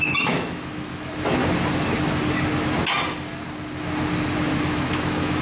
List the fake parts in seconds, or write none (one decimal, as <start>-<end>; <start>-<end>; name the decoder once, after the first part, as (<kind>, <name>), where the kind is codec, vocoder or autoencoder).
0.0-1.4 (autoencoder, DAC-VAE); 4.6-5.4